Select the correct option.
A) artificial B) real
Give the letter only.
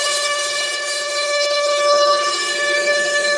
A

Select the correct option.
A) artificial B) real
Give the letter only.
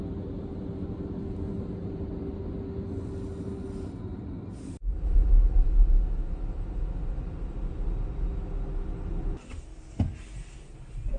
B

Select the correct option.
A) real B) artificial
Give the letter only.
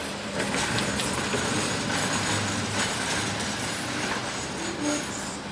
A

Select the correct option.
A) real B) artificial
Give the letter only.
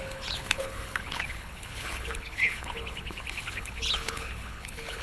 B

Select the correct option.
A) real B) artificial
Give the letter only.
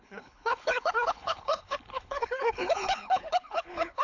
B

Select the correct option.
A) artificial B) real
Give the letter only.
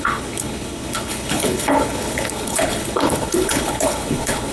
A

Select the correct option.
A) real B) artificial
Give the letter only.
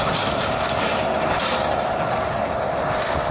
A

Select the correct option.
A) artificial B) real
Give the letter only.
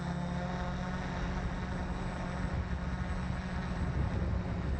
B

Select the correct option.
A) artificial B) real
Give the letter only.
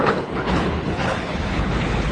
A